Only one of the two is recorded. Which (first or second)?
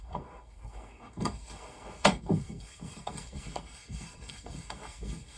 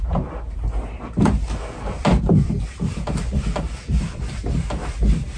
second